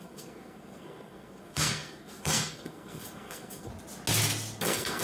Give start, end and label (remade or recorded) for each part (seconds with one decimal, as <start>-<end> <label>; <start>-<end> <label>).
0.0-3.7 remade; 3.7-4.6 recorded; 4.6-5.0 remade